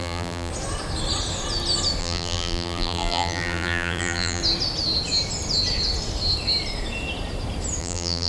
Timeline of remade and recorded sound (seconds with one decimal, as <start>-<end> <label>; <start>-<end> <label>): 0.0-0.5 remade; 0.5-2.0 recorded; 2.0-4.4 remade; 4.4-7.8 recorded; 7.8-8.3 remade